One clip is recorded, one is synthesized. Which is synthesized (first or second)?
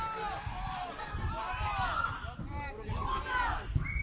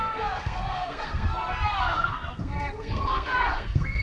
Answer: second